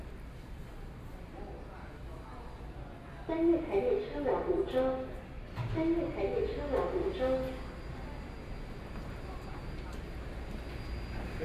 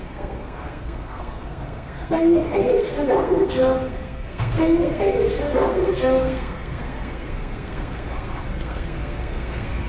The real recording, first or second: first